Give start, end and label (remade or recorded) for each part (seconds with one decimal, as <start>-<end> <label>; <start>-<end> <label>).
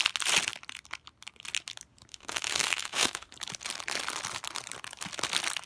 0.0-2.1 recorded; 2.1-3.3 remade; 3.3-5.7 recorded